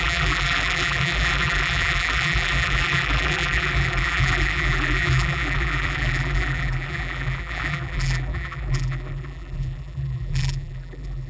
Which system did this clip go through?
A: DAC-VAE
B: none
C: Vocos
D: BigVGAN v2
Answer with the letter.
D